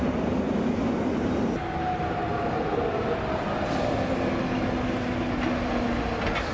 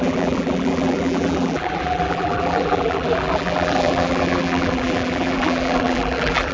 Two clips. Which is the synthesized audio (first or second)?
second